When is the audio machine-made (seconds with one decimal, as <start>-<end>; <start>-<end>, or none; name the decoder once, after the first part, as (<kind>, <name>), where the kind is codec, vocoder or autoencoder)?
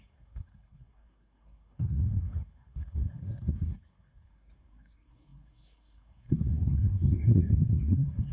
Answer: 0.0-8.3 (codec, SNAC)